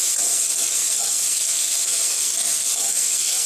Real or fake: fake